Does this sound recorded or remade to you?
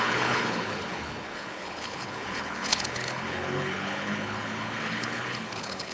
remade